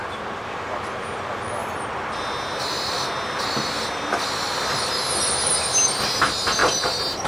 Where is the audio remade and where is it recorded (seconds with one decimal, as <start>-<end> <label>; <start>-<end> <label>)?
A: 0.0-1.6 recorded; 1.6-6.0 remade; 6.0-6.6 recorded; 6.6-7.3 remade